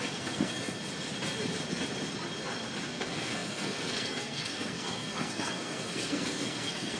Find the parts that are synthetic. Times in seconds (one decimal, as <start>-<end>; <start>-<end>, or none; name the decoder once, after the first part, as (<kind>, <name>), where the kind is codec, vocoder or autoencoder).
0.0-0.8 (codec, SNAC); 2.9-7.0